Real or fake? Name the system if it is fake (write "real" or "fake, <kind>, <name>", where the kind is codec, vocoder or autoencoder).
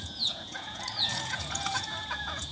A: fake, vocoder, Vocos